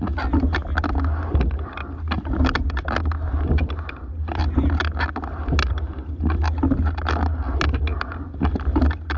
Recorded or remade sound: recorded